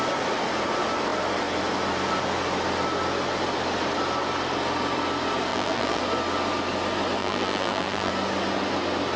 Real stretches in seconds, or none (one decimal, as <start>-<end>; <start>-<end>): 0.0-5.5; 6.0-7.2; 8.1-9.2